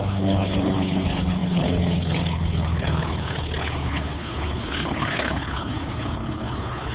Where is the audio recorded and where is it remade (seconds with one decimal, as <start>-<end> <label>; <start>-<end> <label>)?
0.0-6.9 remade